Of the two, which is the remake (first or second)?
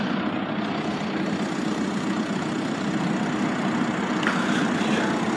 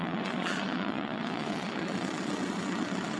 second